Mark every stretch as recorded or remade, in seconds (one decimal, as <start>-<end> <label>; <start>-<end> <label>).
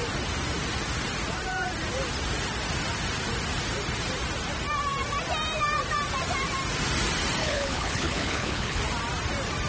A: 0.0-7.4 recorded; 7.4-8.8 remade; 8.8-9.7 recorded